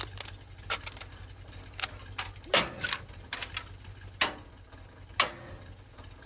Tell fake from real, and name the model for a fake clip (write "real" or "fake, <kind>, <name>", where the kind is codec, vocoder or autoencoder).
real